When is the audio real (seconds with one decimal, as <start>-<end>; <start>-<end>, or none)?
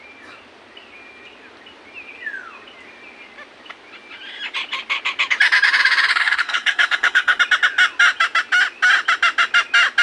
0.0-6.1; 7.4-10.0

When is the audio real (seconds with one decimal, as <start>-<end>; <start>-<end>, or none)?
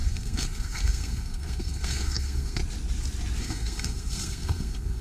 2.6-3.4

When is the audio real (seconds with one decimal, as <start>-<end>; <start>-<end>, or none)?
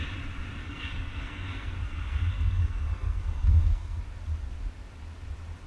0.0-0.6; 4.0-5.7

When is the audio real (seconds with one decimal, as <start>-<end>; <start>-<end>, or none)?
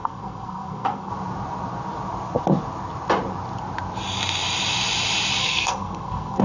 1.1-5.4